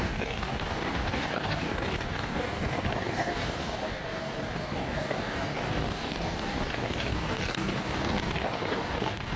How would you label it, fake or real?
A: fake